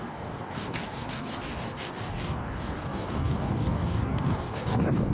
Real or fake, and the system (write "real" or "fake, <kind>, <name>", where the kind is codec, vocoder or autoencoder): fake, codec, DAC